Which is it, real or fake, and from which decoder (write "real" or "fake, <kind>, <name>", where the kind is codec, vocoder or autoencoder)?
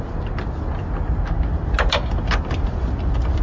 real